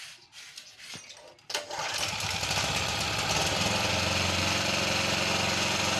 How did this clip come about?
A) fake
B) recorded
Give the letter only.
B